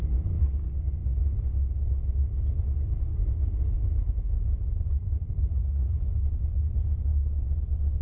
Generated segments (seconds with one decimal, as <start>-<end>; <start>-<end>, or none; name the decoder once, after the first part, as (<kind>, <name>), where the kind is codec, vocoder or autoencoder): 5.5-6.1 (vocoder, Vocos)